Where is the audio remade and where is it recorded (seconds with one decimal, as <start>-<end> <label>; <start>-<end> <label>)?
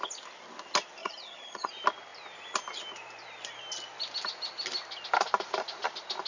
0.0-1.0 recorded; 1.0-1.7 remade; 1.7-6.3 recorded